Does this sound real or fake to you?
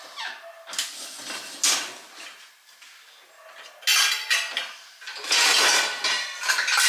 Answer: real